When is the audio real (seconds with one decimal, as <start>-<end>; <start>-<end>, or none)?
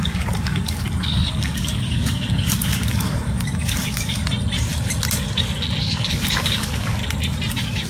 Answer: 4.2-5.8; 7.0-7.5